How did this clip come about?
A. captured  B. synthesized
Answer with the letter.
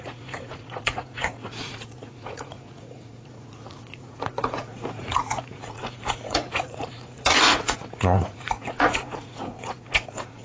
B